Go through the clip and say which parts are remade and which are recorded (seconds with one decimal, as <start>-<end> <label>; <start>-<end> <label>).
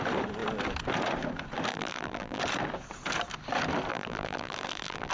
0.0-1.7 recorded; 1.7-2.4 remade; 2.4-3.9 recorded; 3.9-5.1 remade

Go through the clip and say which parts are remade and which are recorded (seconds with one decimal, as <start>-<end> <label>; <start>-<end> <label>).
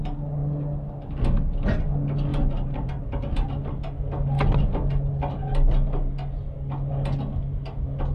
0.0-2.3 recorded; 2.3-3.0 remade; 3.0-8.1 recorded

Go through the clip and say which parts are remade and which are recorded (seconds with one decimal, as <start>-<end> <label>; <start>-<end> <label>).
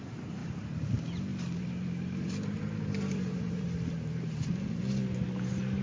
0.0-0.4 recorded; 0.4-0.9 remade; 0.9-1.3 recorded; 1.3-4.8 remade; 4.8-5.8 recorded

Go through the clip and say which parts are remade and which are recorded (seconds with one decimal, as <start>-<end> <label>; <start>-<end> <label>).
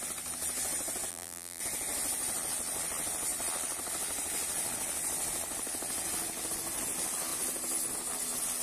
0.0-1.1 recorded; 1.1-1.6 remade; 1.6-8.6 recorded